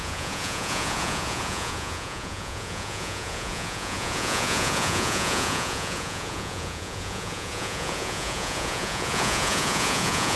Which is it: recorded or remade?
remade